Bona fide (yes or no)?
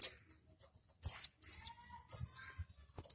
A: yes